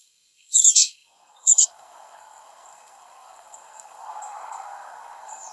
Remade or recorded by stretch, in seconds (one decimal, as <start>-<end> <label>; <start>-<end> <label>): 0.0-5.5 remade